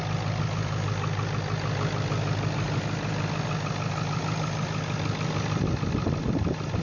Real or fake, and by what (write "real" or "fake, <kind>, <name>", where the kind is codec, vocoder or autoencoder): real